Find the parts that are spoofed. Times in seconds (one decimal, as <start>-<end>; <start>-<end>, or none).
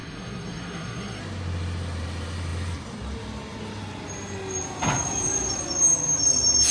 0.0-1.2